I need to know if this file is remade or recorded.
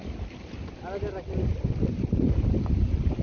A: recorded